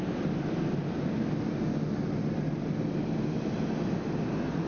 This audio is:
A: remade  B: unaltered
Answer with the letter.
B